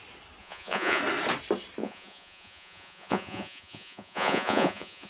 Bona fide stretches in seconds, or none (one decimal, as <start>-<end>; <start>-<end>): 0.0-0.4; 1.0-1.8